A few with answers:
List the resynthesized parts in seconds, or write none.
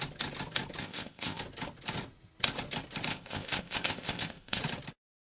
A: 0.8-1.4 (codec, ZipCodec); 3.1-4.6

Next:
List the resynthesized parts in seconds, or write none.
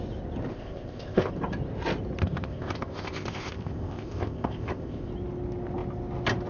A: 0.5-1.3 (codec, ZipCodec); 2.2-5.1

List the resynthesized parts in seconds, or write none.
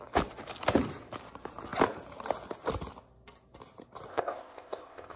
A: 4.1-5.2 (codec, ZipCodec)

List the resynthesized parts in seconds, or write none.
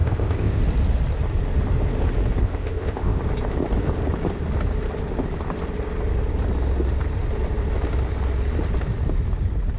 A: 0.0-0.6 (codec, ZipCodec); 2.4-3.2